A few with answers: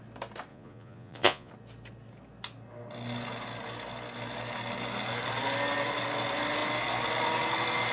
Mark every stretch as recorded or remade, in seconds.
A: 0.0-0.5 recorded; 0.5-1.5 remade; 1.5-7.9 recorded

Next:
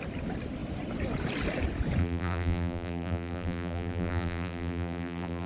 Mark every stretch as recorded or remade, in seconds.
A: 0.0-2.0 recorded; 2.0-5.5 remade

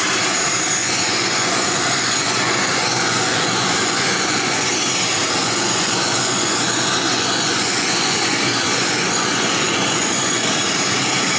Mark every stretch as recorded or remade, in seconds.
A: 0.0-0.8 recorded; 0.8-4.7 remade; 4.7-5.4 recorded; 5.4-10.6 remade; 10.6-11.4 recorded

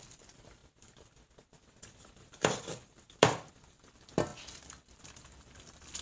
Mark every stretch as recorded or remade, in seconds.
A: 0.0-0.6 remade; 0.6-3.1 recorded; 3.1-6.0 remade

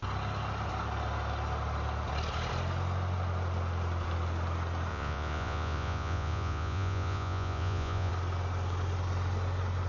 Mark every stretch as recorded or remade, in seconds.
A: 0.0-4.9 recorded; 4.9-8.1 remade; 8.1-9.9 recorded

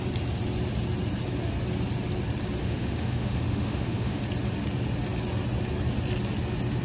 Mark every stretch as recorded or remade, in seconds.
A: 0.0-2.6 recorded; 2.6-4.2 remade; 4.2-6.8 recorded

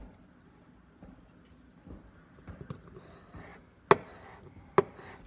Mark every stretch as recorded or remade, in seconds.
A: 0.0-5.3 recorded